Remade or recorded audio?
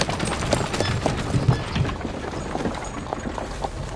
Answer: recorded